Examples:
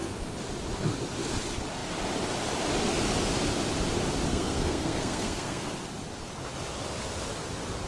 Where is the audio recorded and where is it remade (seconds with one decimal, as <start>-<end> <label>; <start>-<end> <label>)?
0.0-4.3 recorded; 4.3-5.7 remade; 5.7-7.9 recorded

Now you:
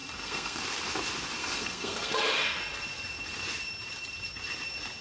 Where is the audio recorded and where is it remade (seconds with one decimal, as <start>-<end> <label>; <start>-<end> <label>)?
0.0-0.6 remade; 0.6-1.4 recorded; 1.4-2.6 remade; 2.6-5.0 recorded

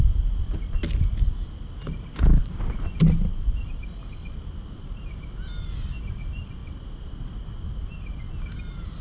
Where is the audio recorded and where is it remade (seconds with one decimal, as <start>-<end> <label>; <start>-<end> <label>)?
0.0-9.0 recorded

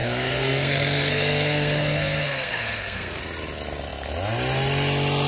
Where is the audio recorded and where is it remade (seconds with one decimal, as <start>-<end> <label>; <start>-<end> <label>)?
0.0-3.2 remade; 3.2-5.3 recorded

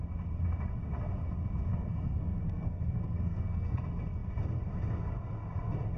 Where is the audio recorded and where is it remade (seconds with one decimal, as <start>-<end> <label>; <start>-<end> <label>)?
0.0-1.7 recorded; 1.7-3.8 remade; 3.8-6.0 recorded